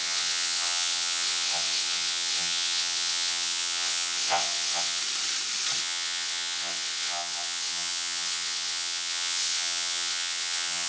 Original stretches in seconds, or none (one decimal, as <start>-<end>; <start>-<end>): 5.0-5.8